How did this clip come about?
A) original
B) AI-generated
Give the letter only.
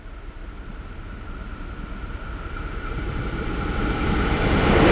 A